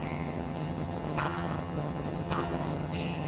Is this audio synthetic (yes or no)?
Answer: yes